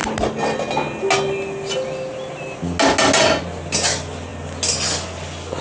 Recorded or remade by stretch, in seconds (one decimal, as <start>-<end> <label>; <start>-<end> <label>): 0.0-5.6 recorded